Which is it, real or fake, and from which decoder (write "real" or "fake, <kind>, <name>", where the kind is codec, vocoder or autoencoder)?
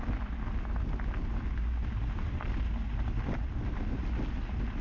real